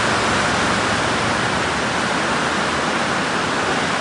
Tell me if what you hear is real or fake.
real